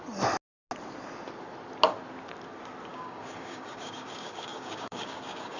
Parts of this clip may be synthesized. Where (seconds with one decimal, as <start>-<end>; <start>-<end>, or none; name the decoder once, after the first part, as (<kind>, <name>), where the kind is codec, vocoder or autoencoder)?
2.9-5.6 (codec, DAC)